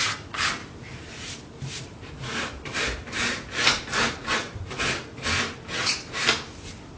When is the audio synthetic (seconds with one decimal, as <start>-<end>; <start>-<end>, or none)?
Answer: 0.6-4.8